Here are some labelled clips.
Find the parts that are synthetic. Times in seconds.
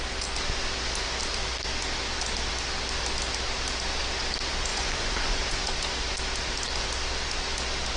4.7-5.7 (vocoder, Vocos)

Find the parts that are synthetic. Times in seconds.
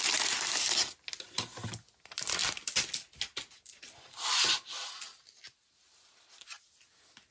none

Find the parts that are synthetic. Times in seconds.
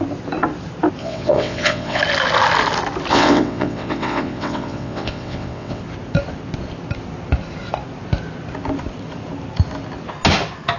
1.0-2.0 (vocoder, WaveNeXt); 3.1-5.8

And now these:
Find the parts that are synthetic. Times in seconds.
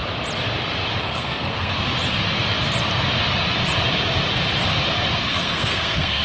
1.0-1.7 (codec, SNAC); 5.3-6.2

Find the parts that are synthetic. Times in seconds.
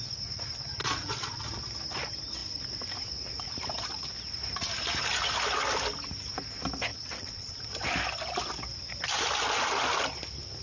0.8-1.4 (vocoder, Vocos); 6.9-7.6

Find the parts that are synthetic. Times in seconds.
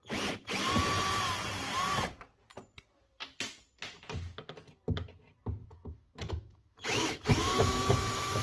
5.6-8.4 (autoencoder, DAC-VAE)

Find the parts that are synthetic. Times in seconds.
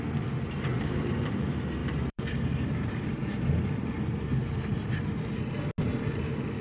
1.8-5.4 (vocoder, BigVGAN v2)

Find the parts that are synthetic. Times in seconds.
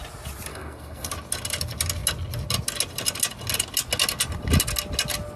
0.5-1.1 (codec, SNAC)